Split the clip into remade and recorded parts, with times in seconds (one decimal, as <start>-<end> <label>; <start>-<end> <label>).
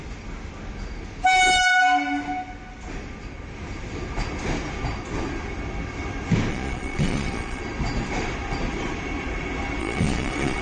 0.0-6.5 recorded; 6.5-7.6 remade; 7.6-9.8 recorded; 9.8-10.6 remade